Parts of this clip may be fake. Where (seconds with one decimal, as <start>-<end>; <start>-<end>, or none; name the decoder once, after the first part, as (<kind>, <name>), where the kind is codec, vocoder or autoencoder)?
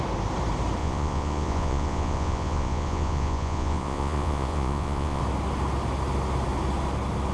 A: 0.8-5.2 (vocoder, Vocos)